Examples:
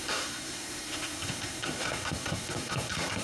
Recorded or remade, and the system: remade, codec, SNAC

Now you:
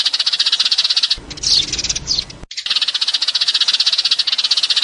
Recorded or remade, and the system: recorded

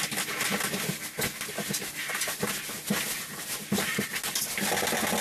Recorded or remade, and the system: recorded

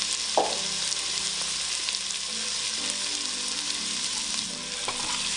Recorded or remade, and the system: recorded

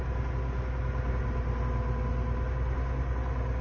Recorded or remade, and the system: recorded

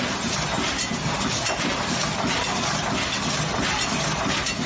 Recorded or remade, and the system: recorded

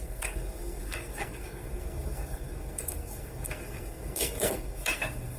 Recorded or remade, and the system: remade, codec, SNAC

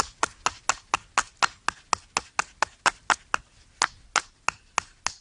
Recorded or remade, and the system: recorded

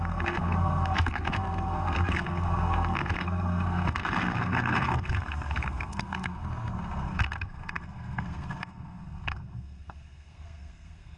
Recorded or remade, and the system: remade, codec, SNAC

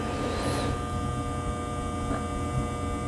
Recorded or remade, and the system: recorded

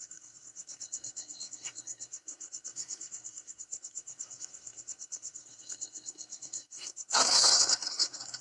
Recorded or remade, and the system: remade, codec, SNAC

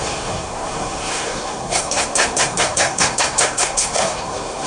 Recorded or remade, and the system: remade, codec, SNAC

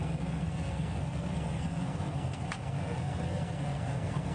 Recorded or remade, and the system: remade, codec, SNAC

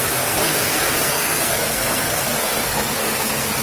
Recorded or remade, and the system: remade, codec, SNAC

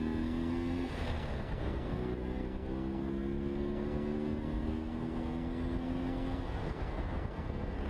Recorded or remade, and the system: remade, codec, SNAC